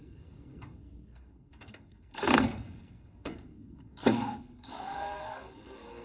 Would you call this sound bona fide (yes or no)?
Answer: no